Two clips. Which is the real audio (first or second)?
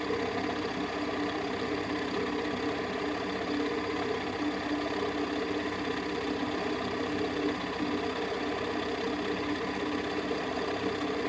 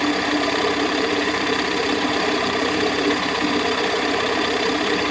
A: first